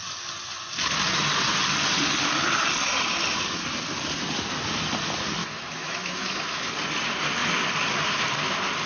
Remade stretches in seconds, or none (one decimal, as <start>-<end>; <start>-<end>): 5.4-6.7